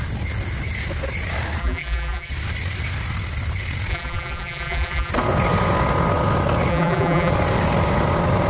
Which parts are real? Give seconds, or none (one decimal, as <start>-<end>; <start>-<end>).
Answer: 0.0-1.6; 2.3-3.9; 5.1-6.7; 7.3-8.5